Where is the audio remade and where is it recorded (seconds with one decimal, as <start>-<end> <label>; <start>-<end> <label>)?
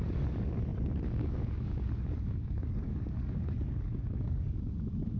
0.0-5.2 remade